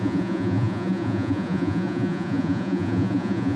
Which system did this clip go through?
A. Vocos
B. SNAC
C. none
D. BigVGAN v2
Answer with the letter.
A